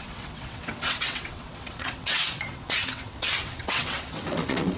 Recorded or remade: remade